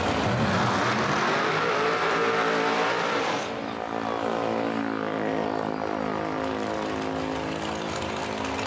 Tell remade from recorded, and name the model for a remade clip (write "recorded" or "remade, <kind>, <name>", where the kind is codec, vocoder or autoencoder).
recorded